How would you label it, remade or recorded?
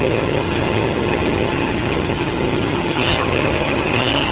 remade